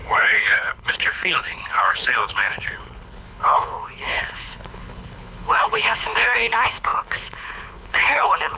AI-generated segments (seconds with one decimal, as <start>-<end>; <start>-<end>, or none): 0.0-8.6